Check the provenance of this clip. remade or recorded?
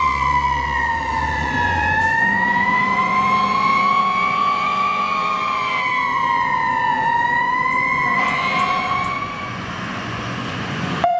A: remade